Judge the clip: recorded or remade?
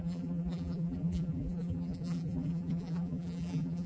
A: remade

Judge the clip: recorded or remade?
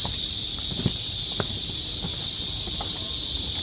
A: recorded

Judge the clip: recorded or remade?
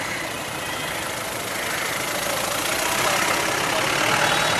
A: recorded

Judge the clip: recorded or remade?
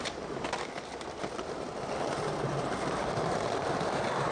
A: remade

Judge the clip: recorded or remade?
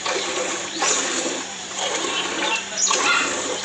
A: remade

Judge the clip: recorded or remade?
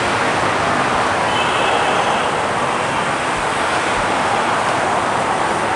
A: recorded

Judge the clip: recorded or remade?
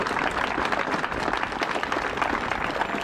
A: recorded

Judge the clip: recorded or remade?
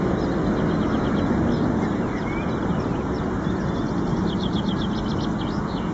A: recorded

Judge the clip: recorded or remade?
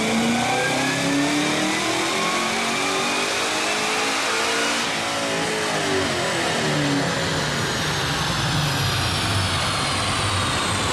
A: recorded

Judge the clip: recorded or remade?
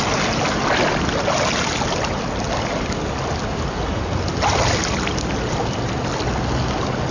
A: recorded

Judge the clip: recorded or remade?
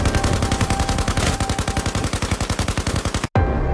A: recorded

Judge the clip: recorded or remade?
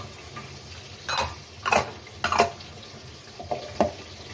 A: recorded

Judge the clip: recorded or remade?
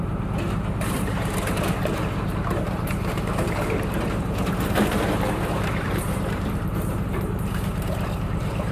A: remade